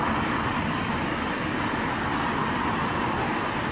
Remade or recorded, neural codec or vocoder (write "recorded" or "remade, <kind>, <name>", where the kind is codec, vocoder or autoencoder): recorded